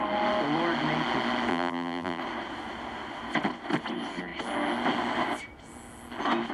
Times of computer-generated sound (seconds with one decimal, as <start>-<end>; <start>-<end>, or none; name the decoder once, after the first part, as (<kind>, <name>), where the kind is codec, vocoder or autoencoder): 1.5-2.2 (vocoder, BigVGAN v2)